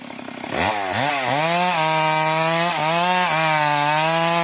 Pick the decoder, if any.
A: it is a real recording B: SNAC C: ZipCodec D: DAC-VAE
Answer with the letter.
A